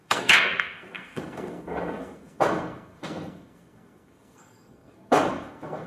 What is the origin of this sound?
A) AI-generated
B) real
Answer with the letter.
A